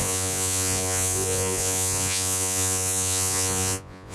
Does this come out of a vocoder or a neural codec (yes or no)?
yes